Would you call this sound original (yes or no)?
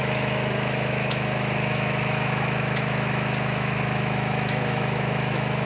no